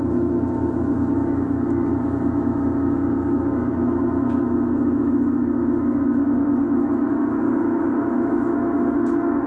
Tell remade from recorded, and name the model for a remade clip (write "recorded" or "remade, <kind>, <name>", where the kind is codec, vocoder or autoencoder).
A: remade, autoencoder, DAC-VAE